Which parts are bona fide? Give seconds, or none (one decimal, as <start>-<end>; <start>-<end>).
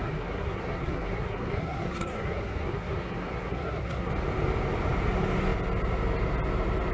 4.1-6.9